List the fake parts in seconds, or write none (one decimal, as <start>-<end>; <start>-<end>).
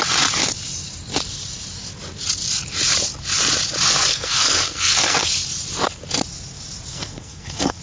4.1-5.3; 6.9-7.8